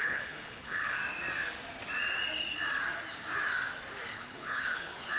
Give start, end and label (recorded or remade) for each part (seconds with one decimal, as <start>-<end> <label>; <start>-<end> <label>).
0.0-1.0 remade; 1.0-4.1 recorded; 4.1-5.2 remade